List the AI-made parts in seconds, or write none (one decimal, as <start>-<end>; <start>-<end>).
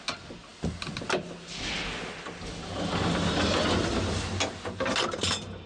none